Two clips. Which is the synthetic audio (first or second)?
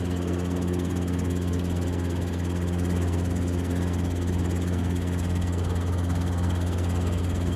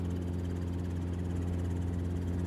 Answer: first